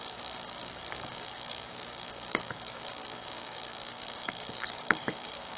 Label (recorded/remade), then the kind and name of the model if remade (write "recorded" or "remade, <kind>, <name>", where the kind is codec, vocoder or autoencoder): remade, codec, DAC